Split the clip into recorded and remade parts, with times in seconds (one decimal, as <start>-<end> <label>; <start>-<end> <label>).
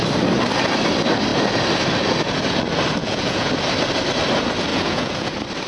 0.0-3.0 recorded; 3.0-3.5 remade; 3.5-4.7 recorded; 4.7-5.3 remade; 5.3-5.7 recorded